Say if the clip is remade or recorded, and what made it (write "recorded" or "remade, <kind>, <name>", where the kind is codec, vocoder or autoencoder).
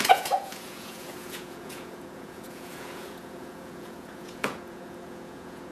remade, vocoder, Vocos